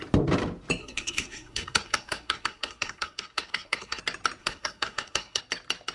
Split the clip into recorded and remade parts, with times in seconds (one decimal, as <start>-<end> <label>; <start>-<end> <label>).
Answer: 0.0-0.8 recorded; 0.8-4.0 remade; 4.0-4.4 recorded; 4.4-5.4 remade; 5.4-5.9 recorded